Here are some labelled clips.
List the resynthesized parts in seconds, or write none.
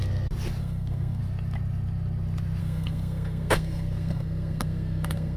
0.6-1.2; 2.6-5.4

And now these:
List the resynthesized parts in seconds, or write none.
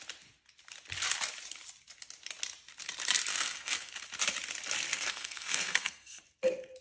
3.3-3.9; 4.9-6.2